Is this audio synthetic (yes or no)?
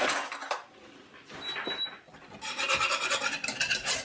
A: no